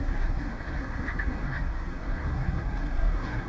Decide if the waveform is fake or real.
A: fake